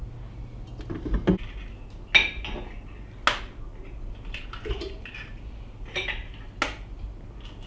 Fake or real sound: real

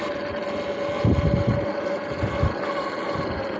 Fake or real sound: real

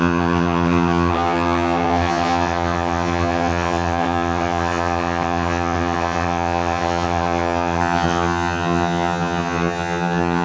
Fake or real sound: fake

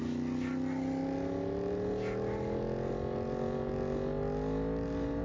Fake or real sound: real